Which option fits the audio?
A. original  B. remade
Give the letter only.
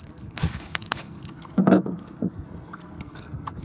B